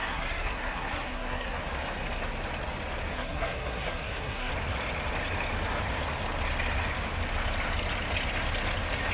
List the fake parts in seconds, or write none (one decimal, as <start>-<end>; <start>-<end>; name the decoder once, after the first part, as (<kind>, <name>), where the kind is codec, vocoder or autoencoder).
0.0-1.6 (codec, SNAC); 3.1-4.5